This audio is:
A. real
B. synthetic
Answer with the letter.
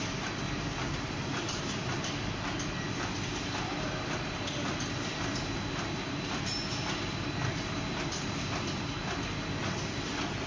A